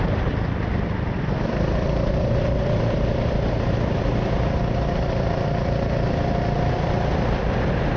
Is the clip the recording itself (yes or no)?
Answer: no